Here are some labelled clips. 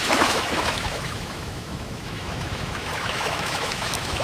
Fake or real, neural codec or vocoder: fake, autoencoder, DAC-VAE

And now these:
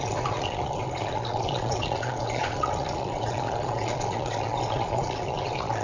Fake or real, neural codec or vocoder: fake, vocoder, Vocos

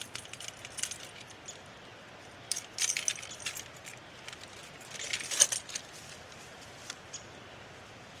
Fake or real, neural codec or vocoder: real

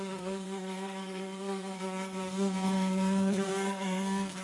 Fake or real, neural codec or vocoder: fake, codec, SNAC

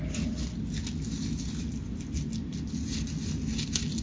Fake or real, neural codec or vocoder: real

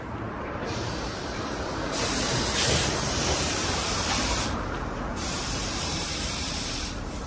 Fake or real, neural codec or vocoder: fake, vocoder, BigVGAN v2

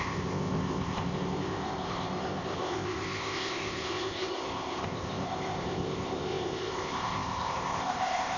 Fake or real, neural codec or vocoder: fake, codec, ZipCodec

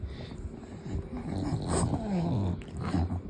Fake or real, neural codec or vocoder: real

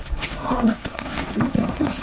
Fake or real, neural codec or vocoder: fake, codec, SNAC